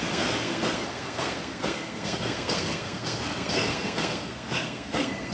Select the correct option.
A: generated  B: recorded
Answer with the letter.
A